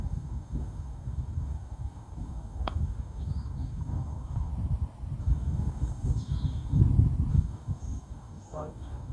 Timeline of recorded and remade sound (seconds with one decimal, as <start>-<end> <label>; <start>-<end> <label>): 0.0-4.5 remade; 4.5-5.2 recorded; 5.2-6.8 remade; 6.8-7.3 recorded; 7.3-9.1 remade

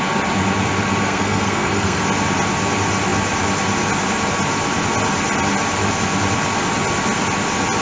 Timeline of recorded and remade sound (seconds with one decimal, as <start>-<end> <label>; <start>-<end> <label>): 0.0-1.0 recorded; 1.0-2.0 remade; 2.0-7.8 recorded